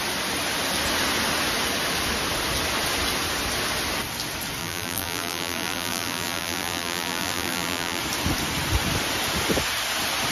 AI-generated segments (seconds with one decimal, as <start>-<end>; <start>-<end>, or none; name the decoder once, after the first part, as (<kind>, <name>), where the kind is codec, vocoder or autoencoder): 4.6-8.0 (vocoder, BigVGAN v2)